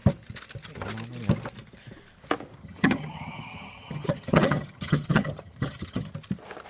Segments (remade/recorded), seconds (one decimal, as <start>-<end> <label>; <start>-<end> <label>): 0.0-2.6 recorded; 2.6-6.1 remade; 6.1-6.7 recorded